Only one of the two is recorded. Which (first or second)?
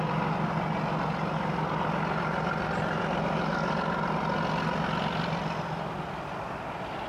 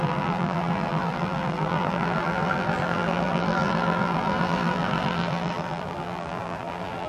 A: first